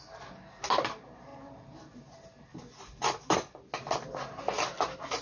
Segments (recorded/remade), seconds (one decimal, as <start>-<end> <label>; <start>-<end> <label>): 0.0-5.2 recorded